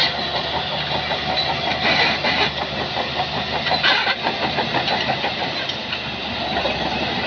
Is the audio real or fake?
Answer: real